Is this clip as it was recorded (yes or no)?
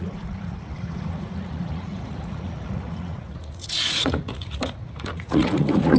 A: no